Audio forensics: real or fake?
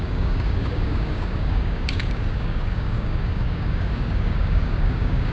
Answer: fake